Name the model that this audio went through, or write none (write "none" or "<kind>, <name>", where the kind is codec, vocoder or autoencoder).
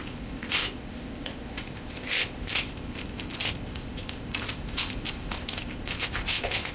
codec, ZipCodec